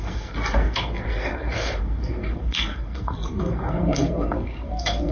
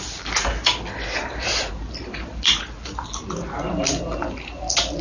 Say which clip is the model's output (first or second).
first